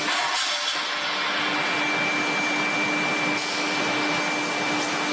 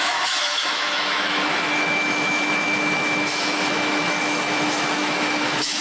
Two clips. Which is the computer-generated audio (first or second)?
second